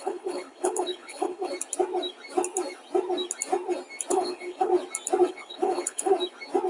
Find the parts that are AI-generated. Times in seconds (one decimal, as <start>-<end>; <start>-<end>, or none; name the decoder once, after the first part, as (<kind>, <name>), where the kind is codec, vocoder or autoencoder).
0.0-1.5 (codec, HILCodec); 4.1-4.7; 5.3-6.1